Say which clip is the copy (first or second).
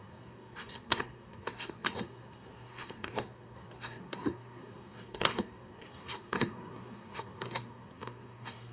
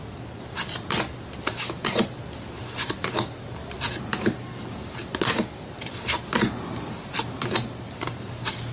first